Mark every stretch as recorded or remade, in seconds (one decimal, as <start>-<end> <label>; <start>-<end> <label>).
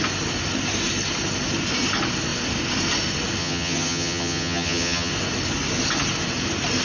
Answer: 0.0-3.4 recorded; 3.4-5.1 remade; 5.1-6.8 recorded